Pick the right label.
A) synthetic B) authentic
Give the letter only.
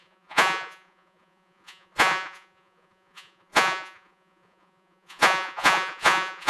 A